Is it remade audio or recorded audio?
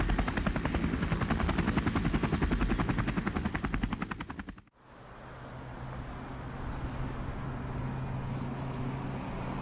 recorded